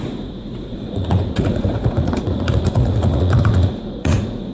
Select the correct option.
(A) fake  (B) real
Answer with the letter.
A